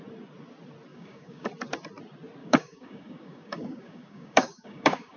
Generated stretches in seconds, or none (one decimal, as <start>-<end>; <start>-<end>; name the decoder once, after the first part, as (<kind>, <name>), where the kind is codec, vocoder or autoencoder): 0.9-1.5 (codec, DAC); 2.4-5.2